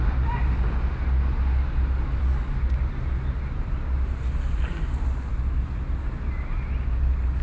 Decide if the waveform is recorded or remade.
recorded